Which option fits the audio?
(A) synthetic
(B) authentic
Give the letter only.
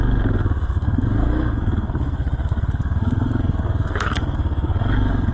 A